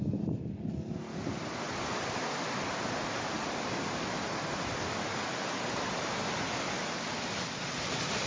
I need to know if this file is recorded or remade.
recorded